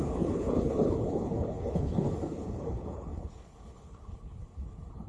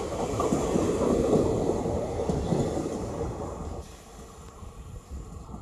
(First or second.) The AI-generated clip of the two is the first